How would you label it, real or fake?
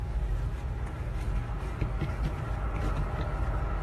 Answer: fake